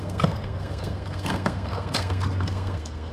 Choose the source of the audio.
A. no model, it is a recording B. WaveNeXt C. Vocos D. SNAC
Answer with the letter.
D